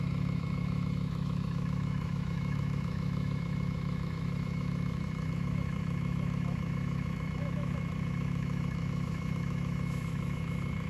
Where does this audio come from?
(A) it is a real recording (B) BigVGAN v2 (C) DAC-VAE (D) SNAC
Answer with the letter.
C